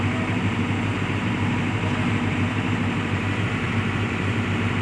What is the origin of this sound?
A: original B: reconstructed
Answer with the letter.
B